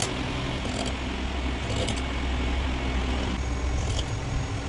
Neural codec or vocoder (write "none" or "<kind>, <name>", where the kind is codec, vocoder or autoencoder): none